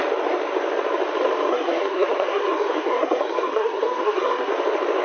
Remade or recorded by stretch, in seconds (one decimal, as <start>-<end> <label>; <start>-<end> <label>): 0.0-1.5 recorded; 1.5-4.5 remade; 4.5-5.0 recorded